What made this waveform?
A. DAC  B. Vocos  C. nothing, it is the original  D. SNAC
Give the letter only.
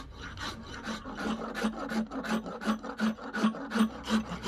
C